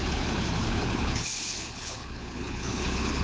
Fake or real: fake